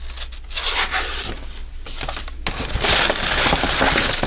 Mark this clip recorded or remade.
recorded